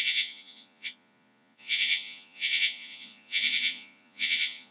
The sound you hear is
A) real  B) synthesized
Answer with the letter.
B